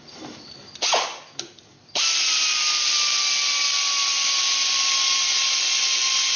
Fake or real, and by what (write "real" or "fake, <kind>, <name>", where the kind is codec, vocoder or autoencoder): real